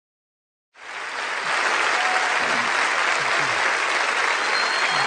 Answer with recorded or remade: recorded